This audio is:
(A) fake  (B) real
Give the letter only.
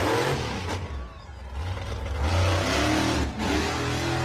B